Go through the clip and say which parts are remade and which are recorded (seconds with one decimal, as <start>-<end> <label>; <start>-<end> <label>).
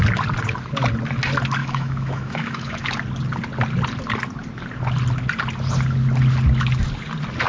0.0-1.6 recorded; 1.6-2.9 remade; 2.9-7.5 recorded